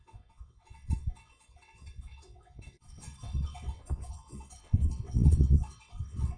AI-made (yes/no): yes